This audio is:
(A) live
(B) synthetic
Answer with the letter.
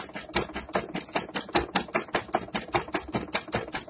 A